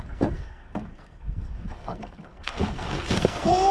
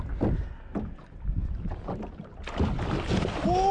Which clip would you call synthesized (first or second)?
first